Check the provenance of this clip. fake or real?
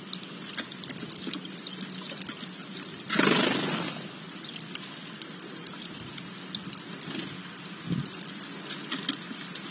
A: real